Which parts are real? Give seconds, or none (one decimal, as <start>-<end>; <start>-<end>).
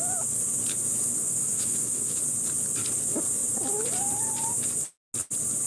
0.0-1.4; 2.2-5.7